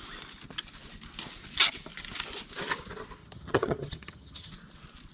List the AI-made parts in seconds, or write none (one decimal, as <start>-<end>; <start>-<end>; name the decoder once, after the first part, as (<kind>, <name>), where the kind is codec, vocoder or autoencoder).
3.2-4.5 (vocoder, HiFi-GAN)